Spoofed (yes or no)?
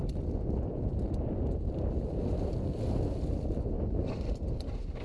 no